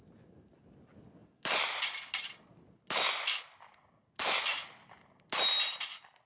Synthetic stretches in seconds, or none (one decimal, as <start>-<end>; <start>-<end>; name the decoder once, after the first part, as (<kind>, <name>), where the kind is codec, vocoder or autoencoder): none